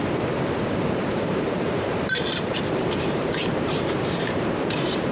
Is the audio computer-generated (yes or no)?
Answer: yes